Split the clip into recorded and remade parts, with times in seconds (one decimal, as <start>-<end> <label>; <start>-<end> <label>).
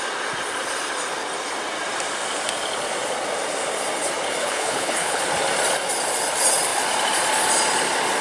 0.0-4.4 recorded; 4.4-5.2 remade; 5.2-8.2 recorded